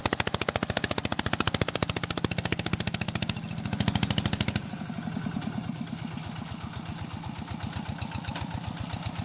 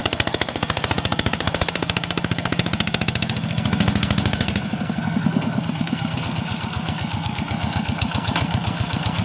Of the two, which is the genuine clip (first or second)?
first